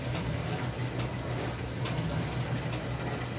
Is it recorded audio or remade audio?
recorded